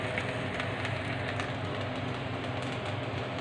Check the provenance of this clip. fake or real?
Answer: real